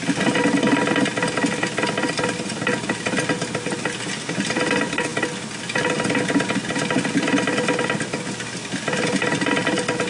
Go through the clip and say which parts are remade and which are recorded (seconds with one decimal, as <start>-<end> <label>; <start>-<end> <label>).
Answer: 0.0-10.1 recorded